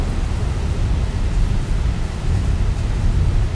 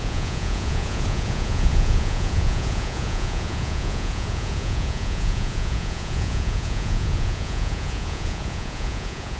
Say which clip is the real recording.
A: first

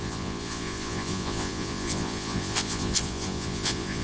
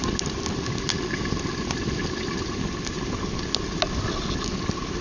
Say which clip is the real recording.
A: second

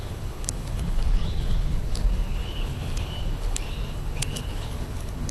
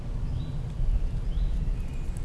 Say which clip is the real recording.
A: second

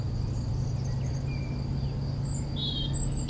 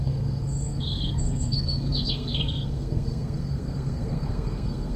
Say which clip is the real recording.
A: first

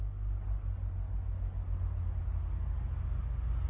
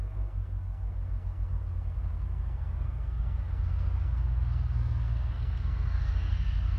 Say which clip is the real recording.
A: first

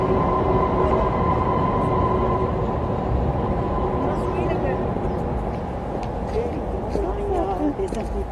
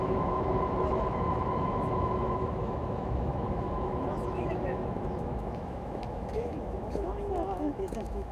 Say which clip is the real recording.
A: first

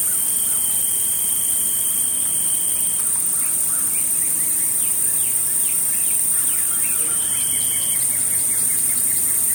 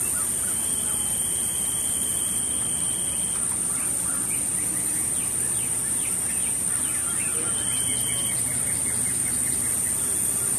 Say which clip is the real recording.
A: second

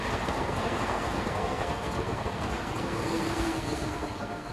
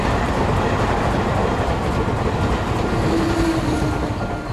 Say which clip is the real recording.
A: second